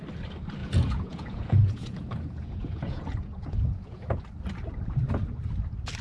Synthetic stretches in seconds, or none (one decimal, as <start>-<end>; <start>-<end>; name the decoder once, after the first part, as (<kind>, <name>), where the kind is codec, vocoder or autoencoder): 0.6-4.2 (vocoder, Vocos)